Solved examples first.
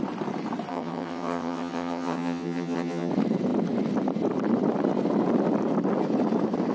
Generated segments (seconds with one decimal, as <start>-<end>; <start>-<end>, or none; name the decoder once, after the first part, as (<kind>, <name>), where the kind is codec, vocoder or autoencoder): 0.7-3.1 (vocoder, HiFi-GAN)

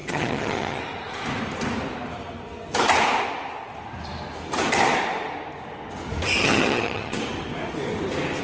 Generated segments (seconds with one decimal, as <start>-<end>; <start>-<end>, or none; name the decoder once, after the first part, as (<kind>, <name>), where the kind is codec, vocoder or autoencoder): 0.0-0.8 (vocoder, HiFi-GAN); 6.4-7.2

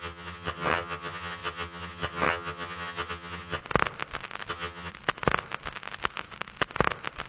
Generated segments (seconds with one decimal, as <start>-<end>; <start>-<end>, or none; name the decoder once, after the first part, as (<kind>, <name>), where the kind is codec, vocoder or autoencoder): 0.0-3.6 (vocoder, HiFi-GAN); 4.5-4.9

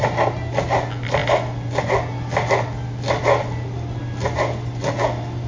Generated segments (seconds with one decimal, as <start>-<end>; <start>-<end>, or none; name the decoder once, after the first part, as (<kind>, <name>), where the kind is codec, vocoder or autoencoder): none

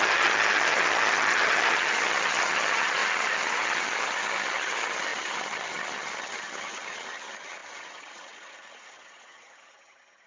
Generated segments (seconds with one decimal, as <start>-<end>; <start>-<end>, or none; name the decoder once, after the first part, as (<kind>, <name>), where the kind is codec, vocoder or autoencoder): 0.0-10.3 (vocoder, HiFi-GAN)